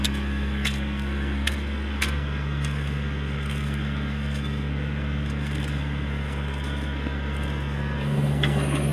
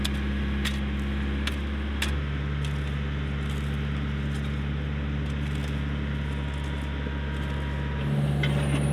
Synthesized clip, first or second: first